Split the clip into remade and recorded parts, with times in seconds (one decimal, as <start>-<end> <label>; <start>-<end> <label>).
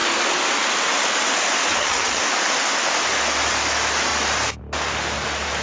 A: 0.0-1.7 recorded; 1.7-2.2 remade; 2.2-5.6 recorded